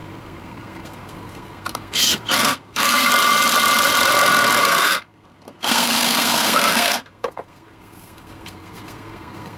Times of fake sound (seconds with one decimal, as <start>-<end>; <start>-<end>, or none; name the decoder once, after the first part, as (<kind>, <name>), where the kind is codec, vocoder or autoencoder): 0.0-3.1 (codec, SNAC); 4.6-9.6